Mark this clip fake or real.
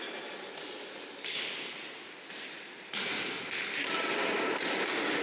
real